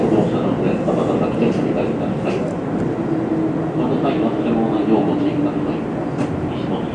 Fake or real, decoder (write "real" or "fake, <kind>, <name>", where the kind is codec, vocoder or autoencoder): real